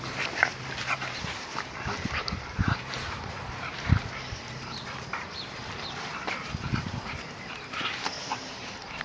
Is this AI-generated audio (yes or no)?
yes